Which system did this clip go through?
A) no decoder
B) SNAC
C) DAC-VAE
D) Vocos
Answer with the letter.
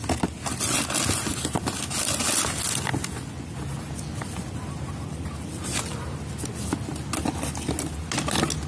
A